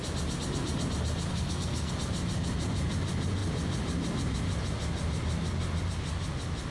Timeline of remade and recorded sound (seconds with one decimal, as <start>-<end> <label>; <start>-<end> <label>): 0.0-1.3 recorded; 1.3-1.9 remade; 1.9-6.7 recorded